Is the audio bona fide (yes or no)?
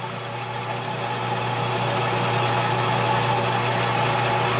yes